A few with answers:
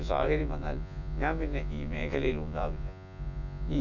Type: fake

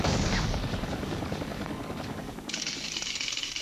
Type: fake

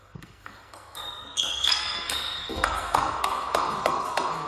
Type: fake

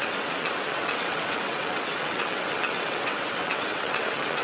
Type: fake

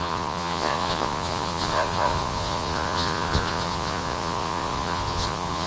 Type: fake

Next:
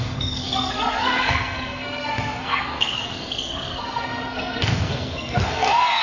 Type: fake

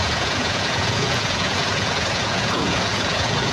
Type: fake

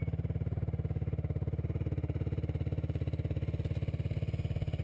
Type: real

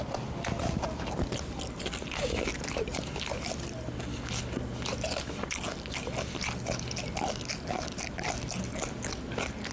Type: real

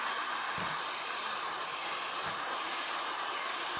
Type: fake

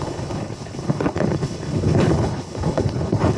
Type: fake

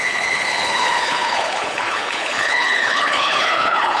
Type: fake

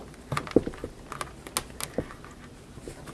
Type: real